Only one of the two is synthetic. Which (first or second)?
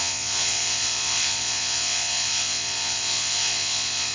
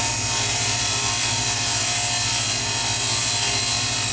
first